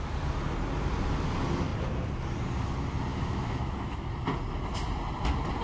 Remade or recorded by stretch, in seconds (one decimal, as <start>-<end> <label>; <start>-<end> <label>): 0.0-3.1 recorded; 3.1-4.1 remade; 4.1-5.6 recorded